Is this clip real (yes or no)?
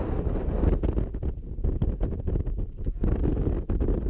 yes